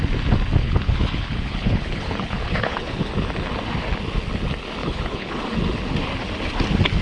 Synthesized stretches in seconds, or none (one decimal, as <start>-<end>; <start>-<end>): 0.6-3.1; 4.8-5.4